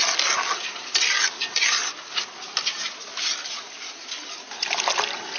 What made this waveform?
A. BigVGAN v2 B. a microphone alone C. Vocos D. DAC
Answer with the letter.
B